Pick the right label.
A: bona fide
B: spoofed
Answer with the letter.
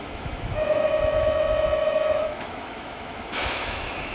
B